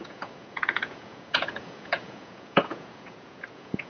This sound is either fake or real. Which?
fake